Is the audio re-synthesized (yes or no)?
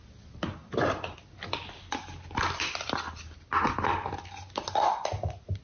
no